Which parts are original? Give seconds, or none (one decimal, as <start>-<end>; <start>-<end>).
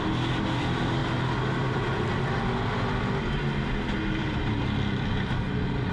0.0-5.9